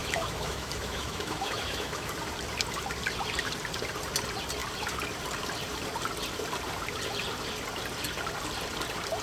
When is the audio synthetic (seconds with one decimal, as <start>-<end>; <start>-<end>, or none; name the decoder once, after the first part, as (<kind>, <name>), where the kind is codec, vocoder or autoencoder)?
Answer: 0.0-2.1 (autoencoder, DAC-VAE)